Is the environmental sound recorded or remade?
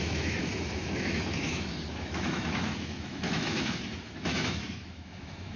remade